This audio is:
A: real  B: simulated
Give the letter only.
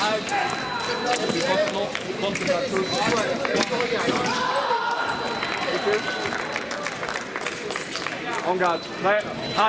A